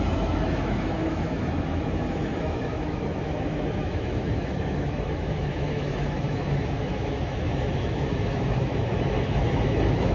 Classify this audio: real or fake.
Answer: fake